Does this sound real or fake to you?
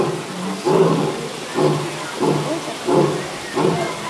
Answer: real